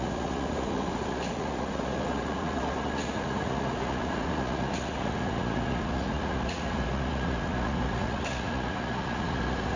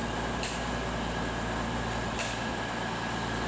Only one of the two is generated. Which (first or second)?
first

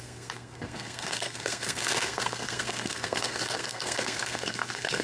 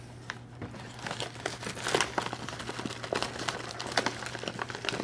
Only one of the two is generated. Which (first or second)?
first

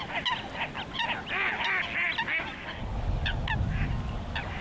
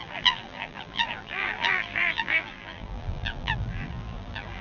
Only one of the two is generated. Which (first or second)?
second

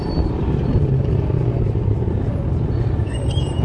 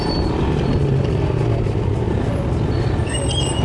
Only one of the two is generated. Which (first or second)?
first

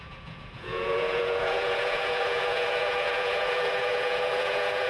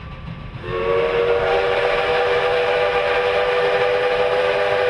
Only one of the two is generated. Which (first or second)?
first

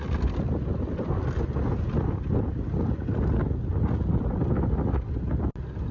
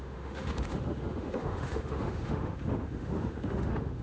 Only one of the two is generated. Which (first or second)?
second